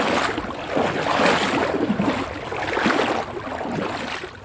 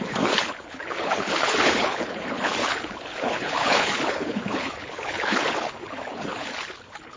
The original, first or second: first